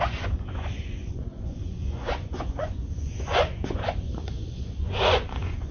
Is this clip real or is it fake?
fake